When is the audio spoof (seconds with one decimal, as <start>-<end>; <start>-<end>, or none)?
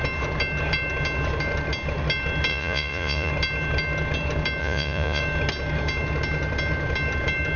2.5-3.3; 4.6-5.2